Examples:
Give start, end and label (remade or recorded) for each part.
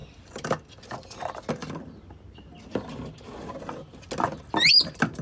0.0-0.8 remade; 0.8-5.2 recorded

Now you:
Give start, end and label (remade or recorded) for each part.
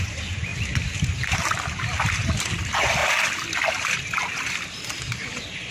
0.0-0.5 remade; 0.5-2.1 recorded; 2.1-3.0 remade; 3.0-3.7 recorded; 3.7-4.3 remade; 4.3-4.8 recorded; 4.8-5.7 remade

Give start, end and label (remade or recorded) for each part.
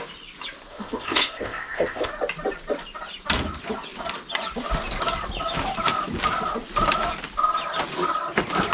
0.0-0.7 recorded; 0.7-2.1 remade; 2.1-8.7 recorded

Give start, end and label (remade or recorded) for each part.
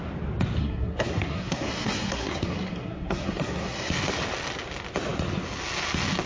0.0-0.6 recorded; 0.6-3.9 remade; 3.9-6.3 recorded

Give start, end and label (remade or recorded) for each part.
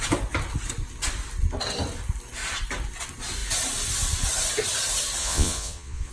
0.0-5.2 recorded; 5.2-6.1 remade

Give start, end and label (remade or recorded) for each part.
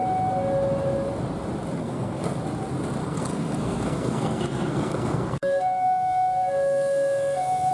0.0-1.8 recorded; 1.8-2.4 remade; 2.4-3.0 recorded; 3.0-7.7 remade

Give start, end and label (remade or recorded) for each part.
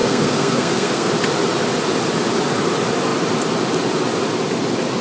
0.0-1.1 remade; 1.1-5.0 recorded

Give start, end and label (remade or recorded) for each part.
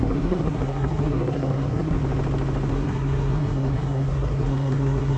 0.0-2.0 remade; 2.0-2.7 recorded; 2.7-5.2 remade